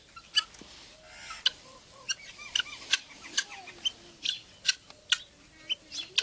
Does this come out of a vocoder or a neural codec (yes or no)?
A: no